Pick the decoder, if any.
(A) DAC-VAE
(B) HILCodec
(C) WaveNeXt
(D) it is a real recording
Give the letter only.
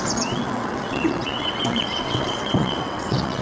C